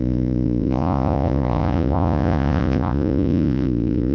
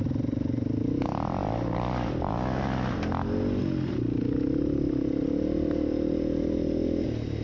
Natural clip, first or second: second